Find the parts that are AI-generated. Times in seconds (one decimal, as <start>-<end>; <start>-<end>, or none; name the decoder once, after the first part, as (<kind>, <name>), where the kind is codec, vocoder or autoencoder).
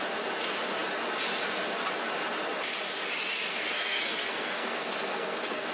3.5-5.7 (codec, SNAC)